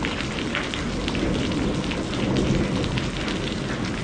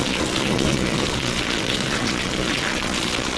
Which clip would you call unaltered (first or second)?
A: first